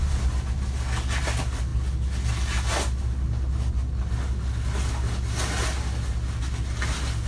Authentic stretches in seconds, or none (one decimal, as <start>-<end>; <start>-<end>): 0.0-7.3

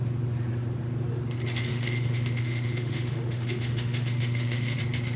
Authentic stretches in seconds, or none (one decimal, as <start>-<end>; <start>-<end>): 0.0-1.7; 4.8-5.2

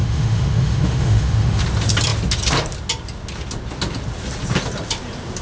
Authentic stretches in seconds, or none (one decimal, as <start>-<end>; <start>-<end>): 1.6-5.4

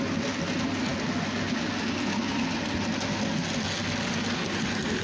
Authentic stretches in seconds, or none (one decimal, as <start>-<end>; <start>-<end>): 0.0-5.0

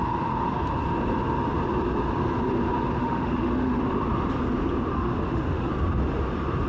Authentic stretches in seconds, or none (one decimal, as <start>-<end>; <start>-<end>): 0.0-3.0; 3.8-4.9; 5.7-6.7

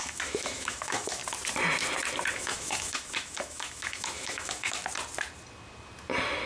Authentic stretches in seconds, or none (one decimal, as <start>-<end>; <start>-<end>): 1.2-2.3; 4.8-6.5

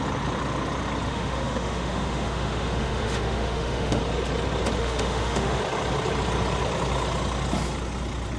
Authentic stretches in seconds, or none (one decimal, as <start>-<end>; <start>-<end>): 0.0-1.1; 4.0-4.8; 5.6-8.4

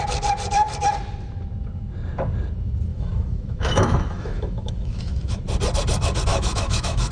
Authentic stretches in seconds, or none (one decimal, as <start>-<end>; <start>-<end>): 0.0-2.9; 5.4-6.3